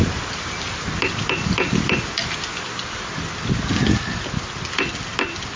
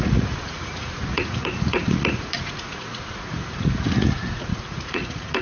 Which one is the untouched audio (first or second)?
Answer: first